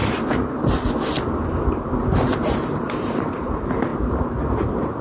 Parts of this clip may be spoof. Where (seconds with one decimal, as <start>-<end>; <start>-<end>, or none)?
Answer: 1.7-5.0